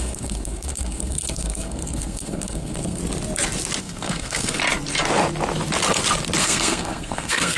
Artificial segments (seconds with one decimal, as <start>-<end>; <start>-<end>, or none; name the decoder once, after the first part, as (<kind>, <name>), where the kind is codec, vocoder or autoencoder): 0.0-3.0 (codec, SNAC); 3.8-4.6; 6.4-7.6